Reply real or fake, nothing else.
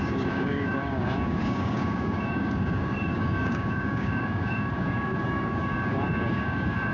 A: fake